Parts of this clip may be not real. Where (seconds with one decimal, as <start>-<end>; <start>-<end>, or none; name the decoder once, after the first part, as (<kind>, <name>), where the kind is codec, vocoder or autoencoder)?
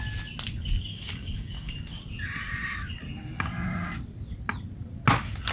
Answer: 0.9-1.7 (codec, DAC)